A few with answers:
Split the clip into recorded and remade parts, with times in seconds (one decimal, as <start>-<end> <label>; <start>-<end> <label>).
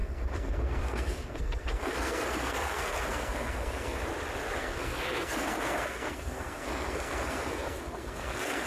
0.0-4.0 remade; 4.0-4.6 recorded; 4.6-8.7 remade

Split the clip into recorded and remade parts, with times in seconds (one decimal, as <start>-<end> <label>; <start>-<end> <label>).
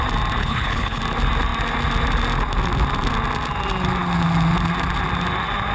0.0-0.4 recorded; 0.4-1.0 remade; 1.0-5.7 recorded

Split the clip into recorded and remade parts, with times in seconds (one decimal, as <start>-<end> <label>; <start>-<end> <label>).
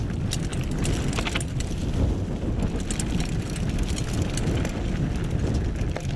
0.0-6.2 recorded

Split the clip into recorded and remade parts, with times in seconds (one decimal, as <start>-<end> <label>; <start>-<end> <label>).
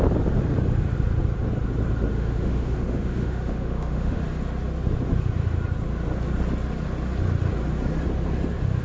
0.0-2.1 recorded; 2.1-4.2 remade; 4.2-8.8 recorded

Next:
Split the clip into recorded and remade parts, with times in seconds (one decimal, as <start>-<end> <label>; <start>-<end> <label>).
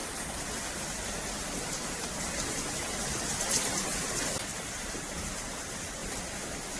0.0-4.5 recorded; 4.5-5.3 remade; 5.3-6.8 recorded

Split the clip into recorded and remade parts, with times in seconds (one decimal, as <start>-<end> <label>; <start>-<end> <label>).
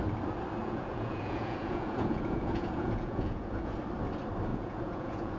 0.0-0.6 recorded; 0.6-3.8 remade; 3.8-4.5 recorded; 4.5-5.4 remade